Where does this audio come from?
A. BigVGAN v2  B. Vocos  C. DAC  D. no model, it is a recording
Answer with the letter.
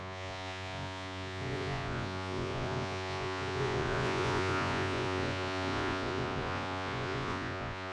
B